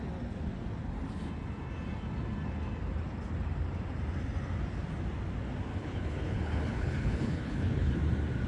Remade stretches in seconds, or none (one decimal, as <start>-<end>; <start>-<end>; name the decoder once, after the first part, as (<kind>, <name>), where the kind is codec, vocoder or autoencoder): 5.7-7.9 (codec, HILCodec)

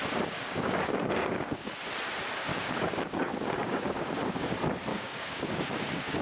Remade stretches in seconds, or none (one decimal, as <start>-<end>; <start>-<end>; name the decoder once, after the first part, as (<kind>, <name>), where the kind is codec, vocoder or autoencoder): 0.4-1.7 (codec, DAC); 2.5-4.5; 4.9-6.2

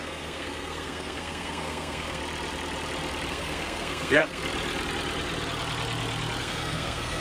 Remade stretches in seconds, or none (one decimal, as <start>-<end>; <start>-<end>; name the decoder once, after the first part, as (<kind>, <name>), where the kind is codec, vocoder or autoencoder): 0.0-2.2 (codec, SNAC); 3.3-4.4; 6.4-7.2

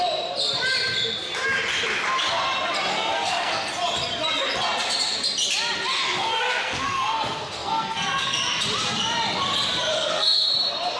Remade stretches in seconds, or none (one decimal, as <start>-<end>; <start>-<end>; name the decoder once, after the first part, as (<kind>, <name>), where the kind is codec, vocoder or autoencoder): 2.9-3.7 (codec, SNAC); 5.9-8.4; 9.9-10.5

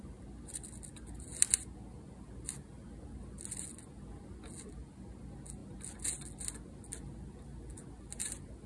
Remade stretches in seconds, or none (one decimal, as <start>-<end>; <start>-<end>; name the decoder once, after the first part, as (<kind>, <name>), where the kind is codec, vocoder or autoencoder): none